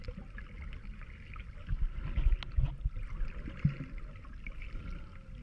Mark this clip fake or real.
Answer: real